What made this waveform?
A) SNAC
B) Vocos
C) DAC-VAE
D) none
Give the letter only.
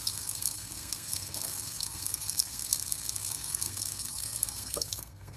A